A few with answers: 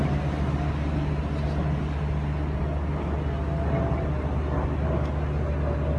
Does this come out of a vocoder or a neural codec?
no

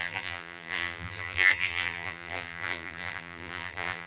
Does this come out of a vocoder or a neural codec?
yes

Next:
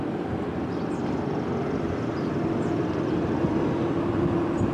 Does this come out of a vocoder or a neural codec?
no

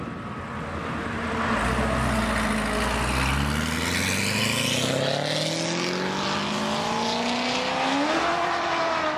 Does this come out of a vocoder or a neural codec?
no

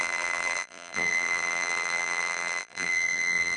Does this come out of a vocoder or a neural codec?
yes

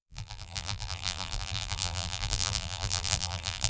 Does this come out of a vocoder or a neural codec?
yes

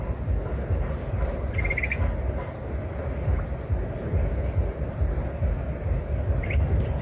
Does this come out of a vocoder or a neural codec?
no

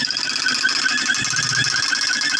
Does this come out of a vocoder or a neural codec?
no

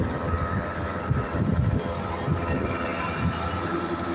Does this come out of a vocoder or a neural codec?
yes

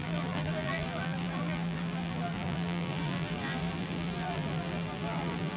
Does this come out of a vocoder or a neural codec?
yes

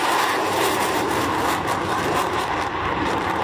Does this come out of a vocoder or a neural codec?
yes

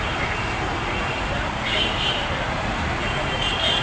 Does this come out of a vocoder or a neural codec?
yes